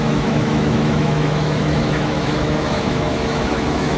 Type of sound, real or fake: fake